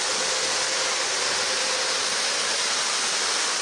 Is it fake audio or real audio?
real